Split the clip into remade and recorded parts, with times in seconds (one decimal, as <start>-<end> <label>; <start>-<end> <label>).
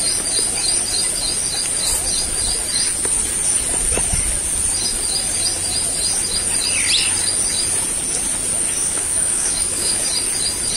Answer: 0.0-8.8 recorded; 8.8-10.0 remade; 10.0-10.8 recorded